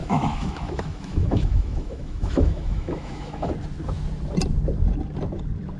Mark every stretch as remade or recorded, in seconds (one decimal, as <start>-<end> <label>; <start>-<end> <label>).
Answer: 0.0-3.5 remade; 3.5-5.8 recorded